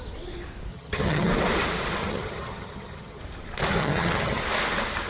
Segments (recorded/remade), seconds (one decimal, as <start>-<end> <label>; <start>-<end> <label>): 0.0-0.7 recorded; 0.7-1.3 remade; 1.3-2.0 recorded; 2.0-3.2 remade; 3.2-3.8 recorded; 3.8-4.4 remade; 4.4-5.1 recorded